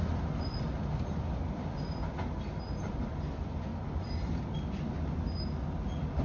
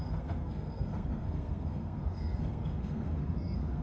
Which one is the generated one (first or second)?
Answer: second